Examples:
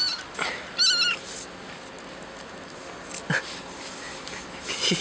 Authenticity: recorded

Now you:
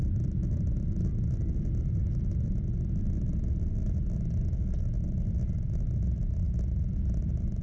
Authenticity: recorded